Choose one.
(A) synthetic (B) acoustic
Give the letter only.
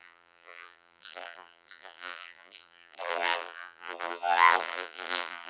A